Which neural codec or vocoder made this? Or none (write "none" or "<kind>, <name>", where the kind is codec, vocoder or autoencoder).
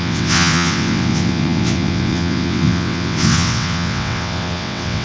vocoder, WaveNeXt